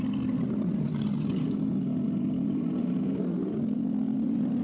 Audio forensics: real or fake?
real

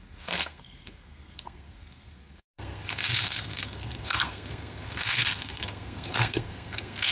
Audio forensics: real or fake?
fake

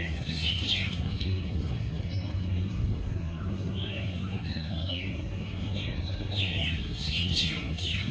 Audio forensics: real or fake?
fake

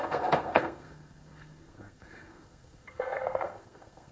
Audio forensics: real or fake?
fake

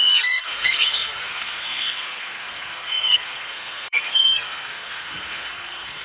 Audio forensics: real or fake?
fake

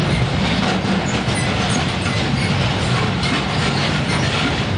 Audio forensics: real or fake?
real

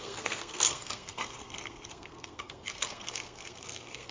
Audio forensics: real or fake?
fake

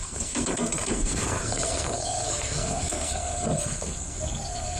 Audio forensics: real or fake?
fake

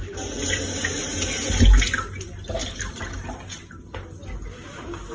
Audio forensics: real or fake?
real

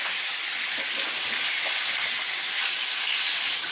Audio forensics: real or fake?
real